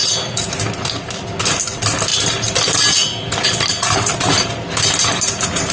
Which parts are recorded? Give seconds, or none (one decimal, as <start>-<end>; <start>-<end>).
0.0-5.7